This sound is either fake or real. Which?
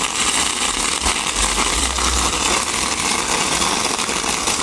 real